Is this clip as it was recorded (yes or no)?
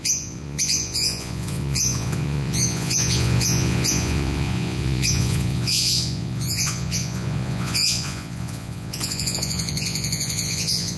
no